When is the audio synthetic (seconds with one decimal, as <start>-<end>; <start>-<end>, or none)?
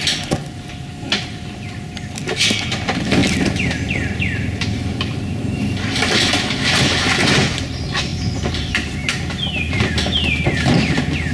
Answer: 3.2-6.5; 8.1-8.7